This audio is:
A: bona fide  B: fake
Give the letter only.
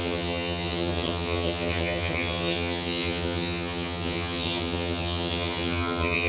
B